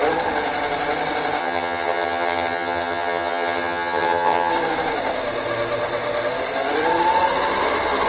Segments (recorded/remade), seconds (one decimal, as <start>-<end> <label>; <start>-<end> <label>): 0.0-1.4 recorded; 1.4-4.5 remade; 4.5-8.1 recorded